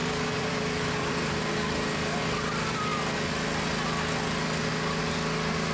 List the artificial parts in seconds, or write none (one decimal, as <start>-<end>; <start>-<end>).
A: 0.0-1.3